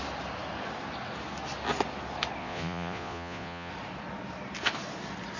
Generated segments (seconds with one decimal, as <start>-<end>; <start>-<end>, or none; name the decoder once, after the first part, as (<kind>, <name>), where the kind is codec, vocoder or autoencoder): 2.4-3.7 (vocoder, Vocos)